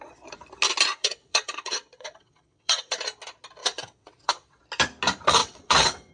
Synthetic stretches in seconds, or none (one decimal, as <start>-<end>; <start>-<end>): 0.9-3.0; 3.6-4.6; 5.4-6.1